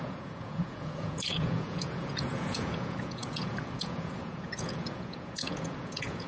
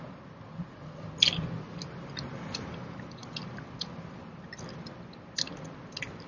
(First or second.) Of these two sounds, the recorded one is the second